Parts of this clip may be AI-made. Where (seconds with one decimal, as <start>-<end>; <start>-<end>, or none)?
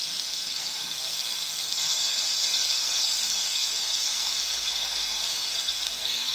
0.0-6.3